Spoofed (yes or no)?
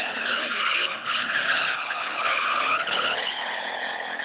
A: yes